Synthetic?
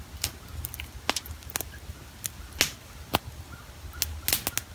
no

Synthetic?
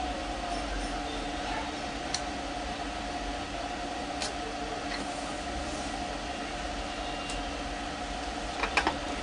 no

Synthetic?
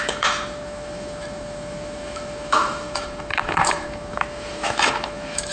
yes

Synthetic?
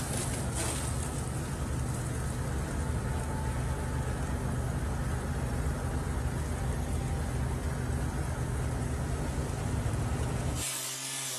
no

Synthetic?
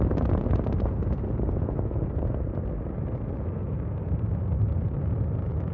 no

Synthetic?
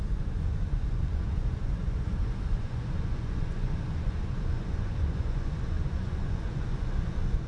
yes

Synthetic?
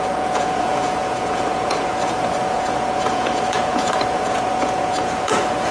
yes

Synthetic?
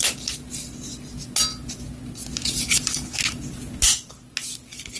no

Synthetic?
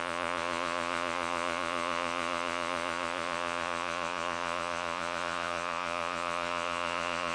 yes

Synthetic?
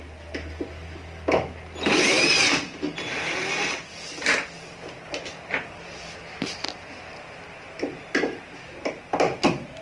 no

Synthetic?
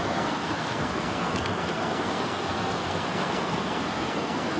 yes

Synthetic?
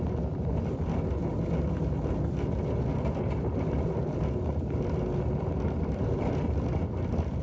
yes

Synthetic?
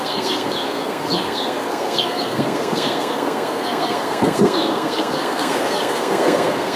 yes